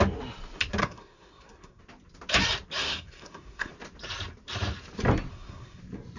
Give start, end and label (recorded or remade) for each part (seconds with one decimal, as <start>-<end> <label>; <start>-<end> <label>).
0.0-0.8 recorded; 0.8-1.8 remade; 1.8-2.8 recorded; 2.8-3.7 remade; 3.7-5.3 recorded; 5.3-5.8 remade; 5.8-6.2 recorded